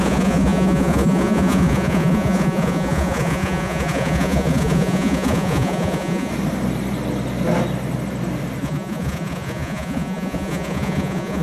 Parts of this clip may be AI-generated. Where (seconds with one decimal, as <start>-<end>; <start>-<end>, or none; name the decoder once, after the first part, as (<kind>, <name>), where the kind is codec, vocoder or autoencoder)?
0.0-6.3 (vocoder, Vocos); 8.6-11.4

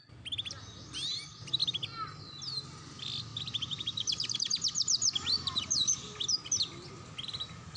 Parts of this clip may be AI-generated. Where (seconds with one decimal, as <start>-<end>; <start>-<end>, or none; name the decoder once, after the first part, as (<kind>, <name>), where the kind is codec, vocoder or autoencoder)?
none

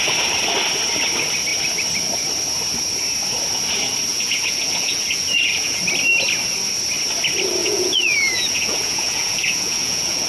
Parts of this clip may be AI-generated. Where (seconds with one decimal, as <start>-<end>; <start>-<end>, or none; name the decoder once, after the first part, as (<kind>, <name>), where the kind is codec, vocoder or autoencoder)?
4.1-5.8 (vocoder, Vocos); 7.6-10.3

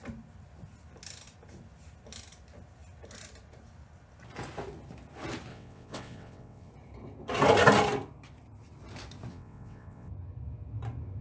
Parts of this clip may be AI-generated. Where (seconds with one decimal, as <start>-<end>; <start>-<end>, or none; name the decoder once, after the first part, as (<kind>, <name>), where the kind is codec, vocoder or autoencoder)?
5.5-6.7 (vocoder, WaveNeXt); 9.3-10.1

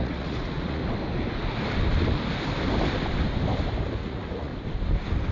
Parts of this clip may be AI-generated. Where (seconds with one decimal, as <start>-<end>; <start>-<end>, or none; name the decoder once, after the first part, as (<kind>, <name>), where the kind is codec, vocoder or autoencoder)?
0.0-0.8 (vocoder, Vocos); 4.0-4.5

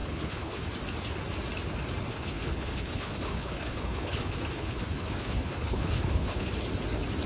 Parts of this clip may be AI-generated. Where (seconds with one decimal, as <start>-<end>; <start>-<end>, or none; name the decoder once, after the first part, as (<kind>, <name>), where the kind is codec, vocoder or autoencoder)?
0.0-0.6 (codec, HILCodec); 2.1-6.5

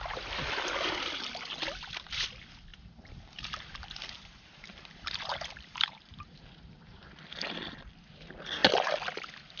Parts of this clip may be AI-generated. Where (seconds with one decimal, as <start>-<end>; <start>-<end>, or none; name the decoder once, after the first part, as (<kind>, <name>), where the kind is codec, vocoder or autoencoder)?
2.7-7.1 (vocoder, BigVGAN v2)